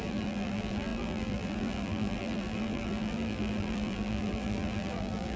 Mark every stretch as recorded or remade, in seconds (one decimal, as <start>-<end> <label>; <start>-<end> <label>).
0.0-5.4 remade